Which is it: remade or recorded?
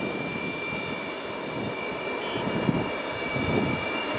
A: recorded